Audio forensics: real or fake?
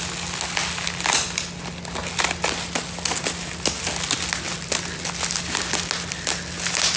real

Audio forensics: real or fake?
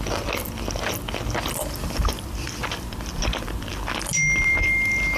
real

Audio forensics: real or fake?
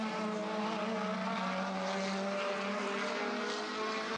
real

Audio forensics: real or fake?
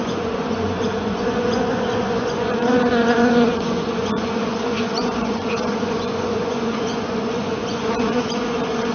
fake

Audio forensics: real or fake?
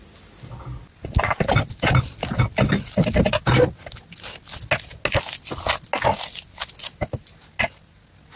real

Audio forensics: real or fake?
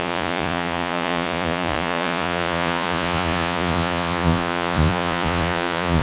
fake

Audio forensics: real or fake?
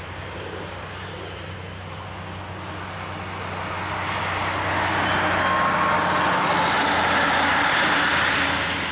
real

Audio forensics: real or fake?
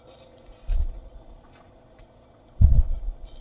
fake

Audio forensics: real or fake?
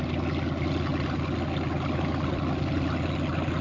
real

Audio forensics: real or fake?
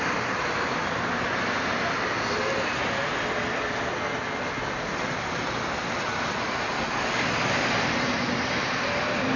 real